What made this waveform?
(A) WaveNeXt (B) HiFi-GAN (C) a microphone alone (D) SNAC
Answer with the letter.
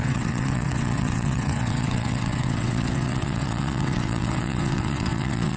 A